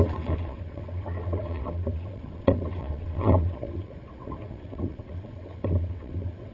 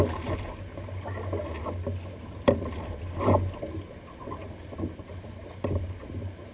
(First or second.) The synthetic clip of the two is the first